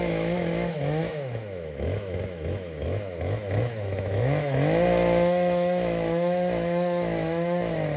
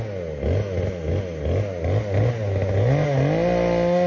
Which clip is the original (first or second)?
second